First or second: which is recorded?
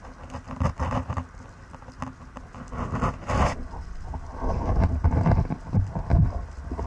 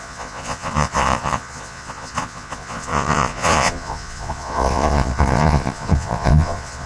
first